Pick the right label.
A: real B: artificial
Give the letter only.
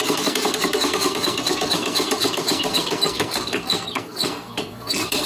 B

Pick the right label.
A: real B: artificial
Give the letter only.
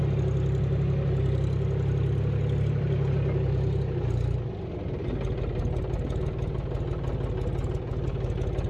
A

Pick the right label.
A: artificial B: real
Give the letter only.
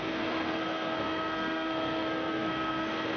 A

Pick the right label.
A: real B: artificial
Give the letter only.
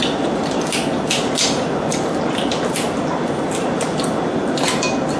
A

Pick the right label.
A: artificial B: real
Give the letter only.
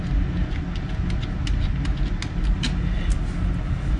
B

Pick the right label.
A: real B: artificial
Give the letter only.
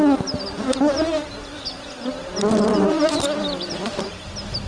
A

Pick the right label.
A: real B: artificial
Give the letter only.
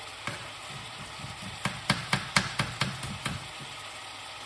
A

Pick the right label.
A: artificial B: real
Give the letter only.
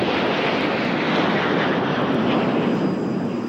B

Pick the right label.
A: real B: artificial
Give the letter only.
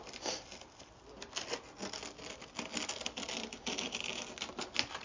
A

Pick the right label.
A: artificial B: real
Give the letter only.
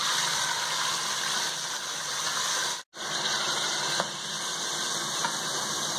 B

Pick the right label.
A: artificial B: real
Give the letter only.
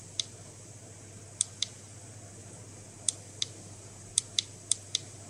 B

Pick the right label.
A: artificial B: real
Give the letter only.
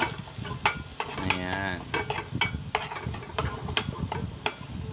B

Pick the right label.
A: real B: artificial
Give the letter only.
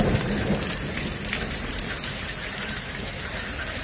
A